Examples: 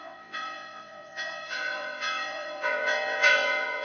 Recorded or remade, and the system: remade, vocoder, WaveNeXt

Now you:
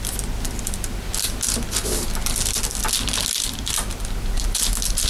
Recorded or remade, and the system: recorded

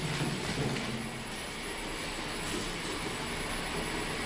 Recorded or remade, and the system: recorded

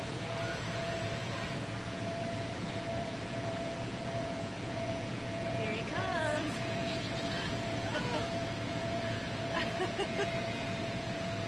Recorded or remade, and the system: remade, vocoder, Vocos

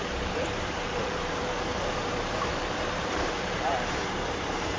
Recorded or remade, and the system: remade, vocoder, BigVGAN v2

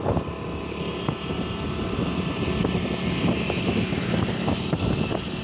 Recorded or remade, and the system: recorded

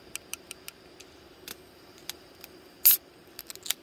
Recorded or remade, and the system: recorded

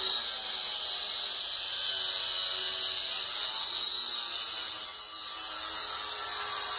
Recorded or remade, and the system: recorded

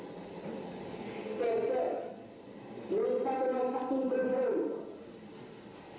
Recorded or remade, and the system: recorded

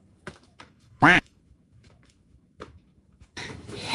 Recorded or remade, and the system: remade, autoencoder, DAC-VAE